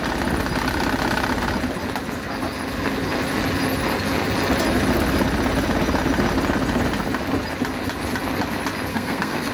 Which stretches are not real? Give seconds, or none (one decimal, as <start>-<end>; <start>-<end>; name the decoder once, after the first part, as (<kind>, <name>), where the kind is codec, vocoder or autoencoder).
8.9-9.5 (codec, SNAC)